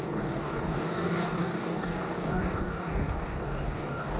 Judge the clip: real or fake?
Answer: fake